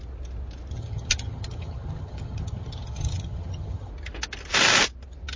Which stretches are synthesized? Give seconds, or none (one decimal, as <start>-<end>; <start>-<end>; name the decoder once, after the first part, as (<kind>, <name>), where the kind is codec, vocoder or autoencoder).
0.7-3.9 (vocoder, HiFi-GAN)